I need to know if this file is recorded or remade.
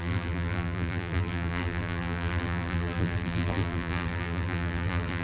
remade